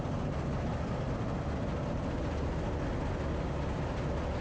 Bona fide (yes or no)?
yes